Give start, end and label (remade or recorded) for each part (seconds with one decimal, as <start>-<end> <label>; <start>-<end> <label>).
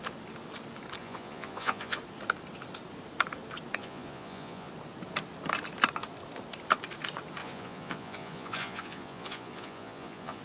0.0-1.0 recorded; 1.0-2.0 remade; 2.0-3.8 recorded; 3.8-4.7 remade; 4.7-7.4 recorded; 7.4-10.4 remade